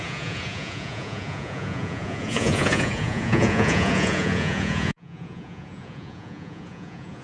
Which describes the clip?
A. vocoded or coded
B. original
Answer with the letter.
A